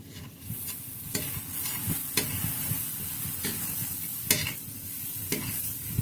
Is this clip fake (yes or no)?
yes